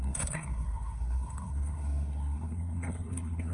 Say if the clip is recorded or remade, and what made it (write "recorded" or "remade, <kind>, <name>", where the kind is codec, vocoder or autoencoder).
remade, codec, SNAC